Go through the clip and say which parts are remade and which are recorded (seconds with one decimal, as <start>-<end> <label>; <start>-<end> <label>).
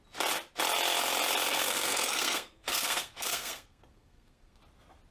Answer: 0.0-1.5 recorded; 1.5-4.6 remade; 4.6-5.1 recorded